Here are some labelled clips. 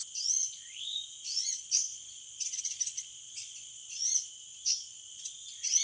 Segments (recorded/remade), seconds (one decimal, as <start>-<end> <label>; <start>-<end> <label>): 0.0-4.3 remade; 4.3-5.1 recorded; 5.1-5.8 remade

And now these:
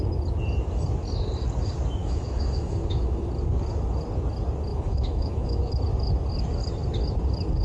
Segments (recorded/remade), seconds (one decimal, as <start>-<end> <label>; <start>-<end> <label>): 0.0-2.0 recorded; 2.0-3.3 remade; 3.3-4.7 recorded; 4.7-5.7 remade; 5.7-7.6 recorded

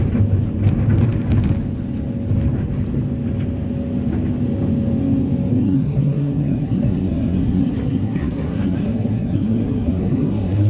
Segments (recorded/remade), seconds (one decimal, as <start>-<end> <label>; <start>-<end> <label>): 0.0-5.5 recorded; 5.5-10.7 remade

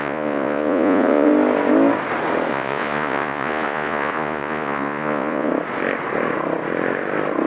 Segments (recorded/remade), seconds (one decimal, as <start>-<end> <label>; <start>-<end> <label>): 0.0-1.3 remade; 1.3-2.5 recorded; 2.5-5.5 remade; 5.5-7.5 recorded

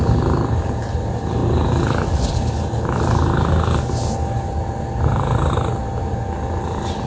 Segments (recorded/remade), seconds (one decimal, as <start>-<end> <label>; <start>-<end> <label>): 0.0-7.1 recorded